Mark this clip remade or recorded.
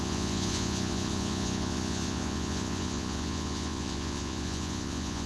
remade